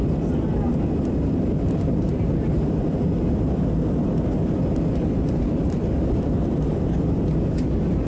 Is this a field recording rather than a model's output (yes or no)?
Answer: no